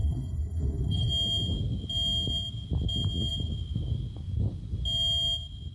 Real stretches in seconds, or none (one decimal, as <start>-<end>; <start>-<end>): 1.1-5.7